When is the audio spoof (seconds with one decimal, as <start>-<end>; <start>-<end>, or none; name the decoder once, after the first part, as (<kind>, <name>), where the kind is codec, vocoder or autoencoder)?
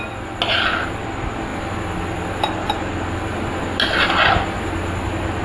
none